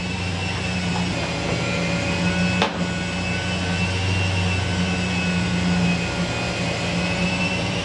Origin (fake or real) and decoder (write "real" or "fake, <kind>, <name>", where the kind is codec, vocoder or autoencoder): real